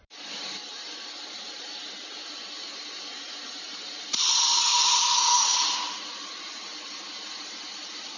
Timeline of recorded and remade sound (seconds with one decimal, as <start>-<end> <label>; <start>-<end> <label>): 0.0-8.2 remade